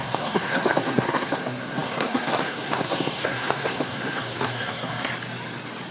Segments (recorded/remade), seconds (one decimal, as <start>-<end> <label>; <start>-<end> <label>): 0.0-5.1 remade; 5.1-5.9 recorded